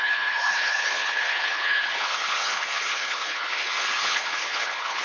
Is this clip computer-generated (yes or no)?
yes